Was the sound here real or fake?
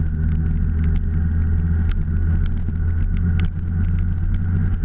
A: real